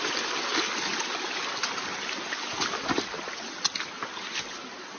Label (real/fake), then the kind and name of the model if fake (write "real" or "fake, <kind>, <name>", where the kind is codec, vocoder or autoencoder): real